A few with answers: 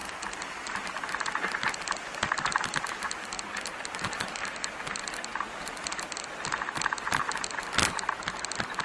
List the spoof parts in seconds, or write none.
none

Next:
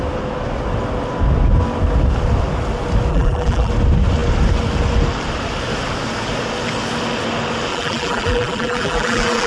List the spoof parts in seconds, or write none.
3.1-3.7; 7.7-9.5

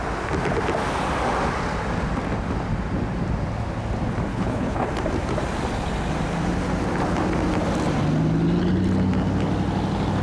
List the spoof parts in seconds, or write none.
4.3-4.9

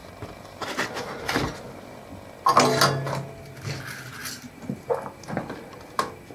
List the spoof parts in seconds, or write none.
none